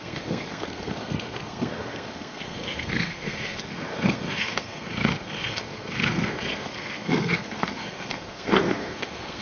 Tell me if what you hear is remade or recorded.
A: remade